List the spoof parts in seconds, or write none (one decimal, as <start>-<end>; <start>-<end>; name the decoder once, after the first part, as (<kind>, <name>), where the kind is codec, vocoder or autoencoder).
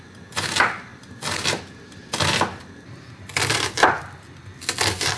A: none